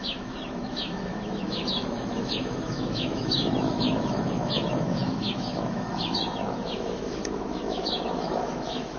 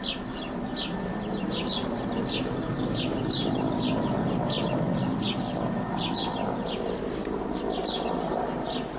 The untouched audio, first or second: second